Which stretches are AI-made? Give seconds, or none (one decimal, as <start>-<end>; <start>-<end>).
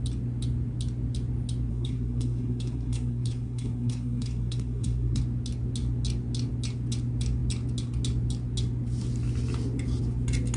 1.7-5.2